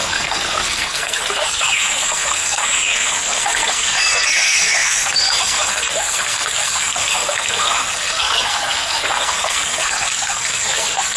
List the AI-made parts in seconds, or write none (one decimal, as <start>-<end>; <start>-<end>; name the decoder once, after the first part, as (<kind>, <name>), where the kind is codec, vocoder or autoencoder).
0.0-11.2 (codec, SNAC)